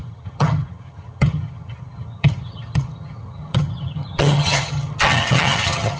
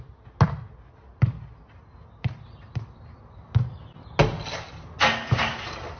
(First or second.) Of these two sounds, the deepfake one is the first